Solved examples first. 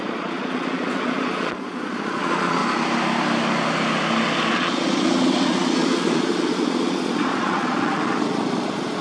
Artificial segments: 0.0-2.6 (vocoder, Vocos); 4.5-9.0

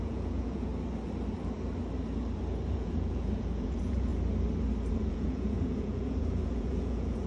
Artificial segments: 0.0-0.7 (vocoder, Vocos); 2.7-4.1; 4.9-7.3

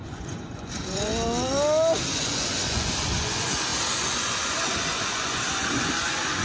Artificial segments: 0.0-1.1 (vocoder, Vocos); 2.1-6.4

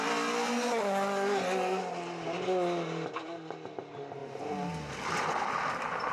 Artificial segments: none

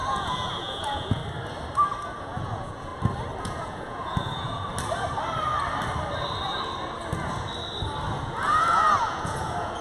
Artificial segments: 0.0-1.2 (vocoder, Vocos); 2.2-2.9; 3.4-4.7; 8.2-9.8

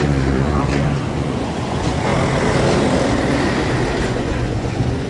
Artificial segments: 0.0-2.1 (vocoder, Vocos); 4.0-5.1

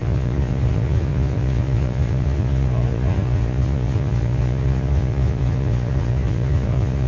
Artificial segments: 0.0-7.1 (vocoder, Vocos)

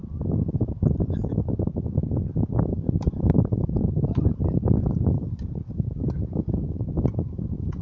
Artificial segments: none